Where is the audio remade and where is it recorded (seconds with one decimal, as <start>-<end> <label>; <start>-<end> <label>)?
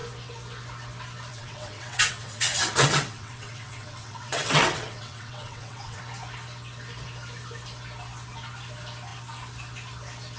0.0-1.3 recorded; 1.3-6.0 remade; 6.0-10.4 recorded